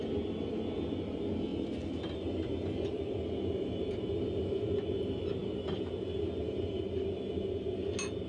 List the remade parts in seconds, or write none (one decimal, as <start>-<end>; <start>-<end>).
none